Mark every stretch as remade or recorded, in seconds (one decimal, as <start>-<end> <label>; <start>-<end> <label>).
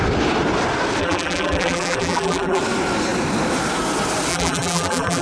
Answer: 0.0-1.0 recorded; 1.0-2.6 remade; 2.6-4.3 recorded; 4.3-5.2 remade